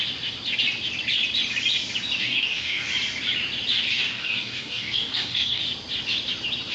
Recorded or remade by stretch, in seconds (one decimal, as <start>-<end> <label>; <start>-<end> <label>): 0.0-2.2 recorded; 2.2-2.9 remade; 2.9-3.9 recorded; 3.9-5.6 remade; 5.6-6.7 recorded